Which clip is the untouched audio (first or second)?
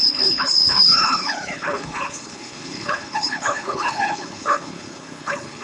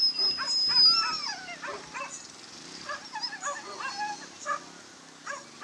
second